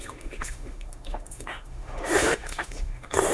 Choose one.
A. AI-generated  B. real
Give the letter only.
A